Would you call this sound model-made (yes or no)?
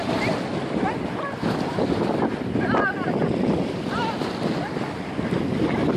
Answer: no